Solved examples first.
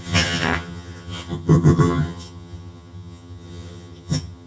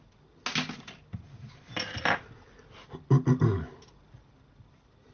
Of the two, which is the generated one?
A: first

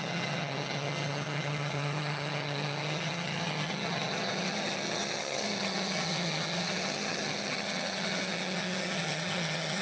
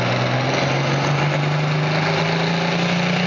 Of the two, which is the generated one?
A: first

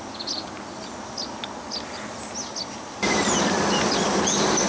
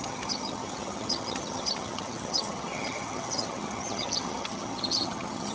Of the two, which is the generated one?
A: second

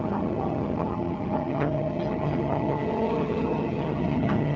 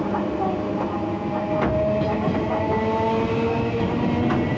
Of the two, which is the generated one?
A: first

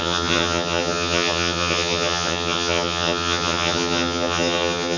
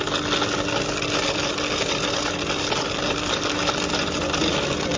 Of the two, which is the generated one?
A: first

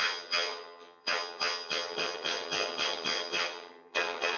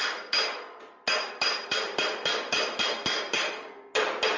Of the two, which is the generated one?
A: first